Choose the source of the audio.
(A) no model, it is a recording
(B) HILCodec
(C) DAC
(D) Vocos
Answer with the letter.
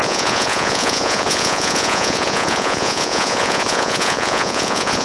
D